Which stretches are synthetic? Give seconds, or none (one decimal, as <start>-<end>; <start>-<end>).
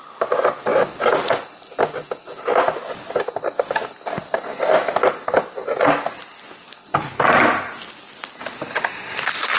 none